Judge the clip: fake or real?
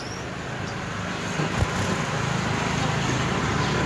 real